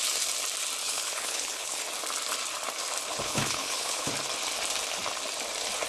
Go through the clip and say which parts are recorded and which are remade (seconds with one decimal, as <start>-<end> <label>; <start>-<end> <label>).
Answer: 0.0-0.8 recorded; 0.8-1.8 remade; 1.8-3.1 recorded; 3.1-4.1 remade; 4.1-5.9 recorded